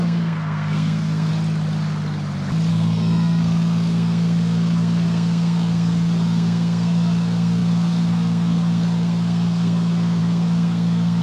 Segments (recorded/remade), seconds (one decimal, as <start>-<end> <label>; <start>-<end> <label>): 0.0-1.3 remade; 1.3-2.7 recorded; 2.7-11.2 remade